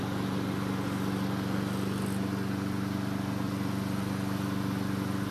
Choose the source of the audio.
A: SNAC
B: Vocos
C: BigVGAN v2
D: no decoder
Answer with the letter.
D